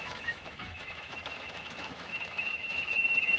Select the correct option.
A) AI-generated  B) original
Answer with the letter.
A